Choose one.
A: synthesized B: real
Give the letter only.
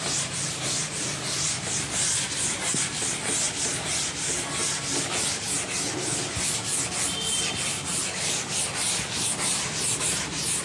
B